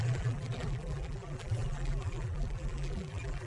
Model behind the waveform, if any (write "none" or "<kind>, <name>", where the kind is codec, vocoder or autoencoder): vocoder, BigVGAN v2